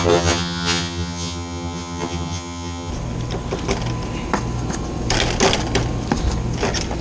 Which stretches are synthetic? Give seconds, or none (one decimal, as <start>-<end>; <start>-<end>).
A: 0.0-2.9

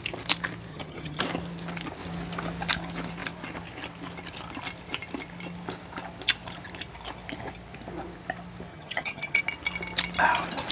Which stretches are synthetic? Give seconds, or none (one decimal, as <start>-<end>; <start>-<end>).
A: 0.7-1.2; 8.7-9.4

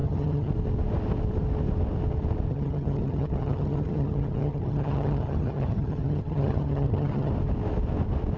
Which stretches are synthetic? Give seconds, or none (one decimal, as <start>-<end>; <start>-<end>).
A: 0.0-0.5; 2.5-7.3

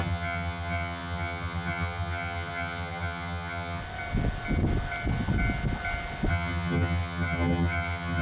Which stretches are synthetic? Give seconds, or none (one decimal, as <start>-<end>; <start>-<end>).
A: 0.0-3.8; 6.3-8.2

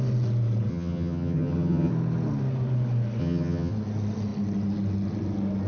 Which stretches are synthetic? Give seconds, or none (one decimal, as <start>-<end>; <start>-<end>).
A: 0.7-1.9; 3.2-3.7

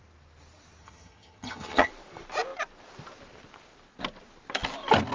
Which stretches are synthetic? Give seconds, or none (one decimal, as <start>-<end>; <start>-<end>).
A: 0.8-1.9